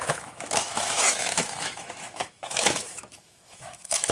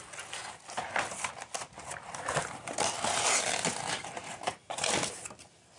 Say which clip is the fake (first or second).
first